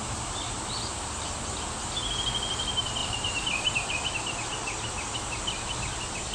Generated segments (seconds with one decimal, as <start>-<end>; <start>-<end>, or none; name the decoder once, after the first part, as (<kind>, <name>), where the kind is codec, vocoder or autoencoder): 3.0-3.9 (vocoder, BigVGAN v2)

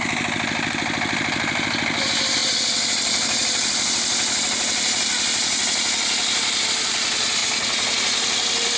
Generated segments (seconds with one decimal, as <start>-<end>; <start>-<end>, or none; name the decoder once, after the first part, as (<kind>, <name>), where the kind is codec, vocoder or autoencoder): 0.0-2.4 (vocoder, BigVGAN v2); 6.6-7.4

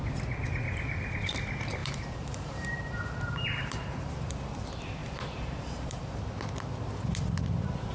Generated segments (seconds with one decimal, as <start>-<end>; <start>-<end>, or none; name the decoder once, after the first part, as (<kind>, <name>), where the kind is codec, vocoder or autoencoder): 1.8-4.3 (vocoder, BigVGAN v2); 5.0-6.2

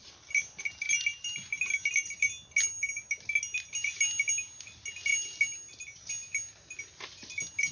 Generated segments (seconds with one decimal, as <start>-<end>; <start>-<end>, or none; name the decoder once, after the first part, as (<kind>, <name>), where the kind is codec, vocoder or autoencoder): none

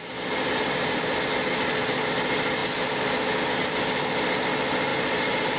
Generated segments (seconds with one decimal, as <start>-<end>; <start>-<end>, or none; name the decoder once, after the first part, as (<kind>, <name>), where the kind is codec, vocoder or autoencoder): 4.9-5.6 (vocoder, BigVGAN v2)